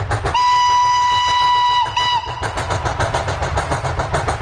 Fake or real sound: real